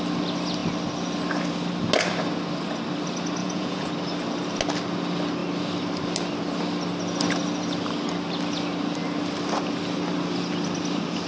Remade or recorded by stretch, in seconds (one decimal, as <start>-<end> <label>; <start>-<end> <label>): 0.0-3.4 recorded; 3.4-3.9 remade; 3.9-11.3 recorded